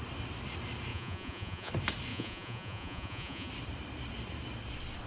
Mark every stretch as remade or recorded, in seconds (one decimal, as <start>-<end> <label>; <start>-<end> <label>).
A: 0.0-0.9 recorded; 0.9-1.7 remade; 1.7-2.1 recorded; 2.1-3.5 remade; 3.5-5.1 recorded